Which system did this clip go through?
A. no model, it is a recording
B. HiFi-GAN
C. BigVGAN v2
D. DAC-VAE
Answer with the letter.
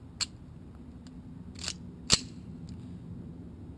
A